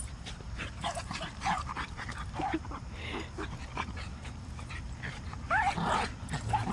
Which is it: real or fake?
fake